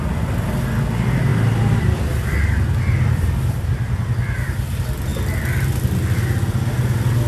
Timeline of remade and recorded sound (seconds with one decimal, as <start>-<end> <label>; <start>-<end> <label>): 0.0-7.3 recorded